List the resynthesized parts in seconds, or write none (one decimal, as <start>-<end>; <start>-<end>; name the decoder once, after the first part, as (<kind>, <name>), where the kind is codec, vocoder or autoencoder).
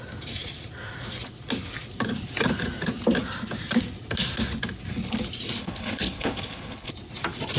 5.6-6.9 (codec, HILCodec)